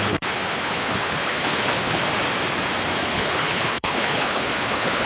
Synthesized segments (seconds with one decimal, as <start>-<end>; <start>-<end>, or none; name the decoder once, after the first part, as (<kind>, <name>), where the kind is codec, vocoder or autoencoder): 0.0-2.0 (codec, HILCodec); 3.0-5.1